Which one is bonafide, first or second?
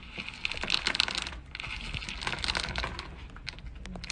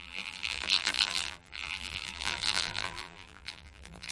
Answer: first